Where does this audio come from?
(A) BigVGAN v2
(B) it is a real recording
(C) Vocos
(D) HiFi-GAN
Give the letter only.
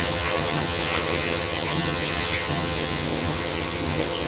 D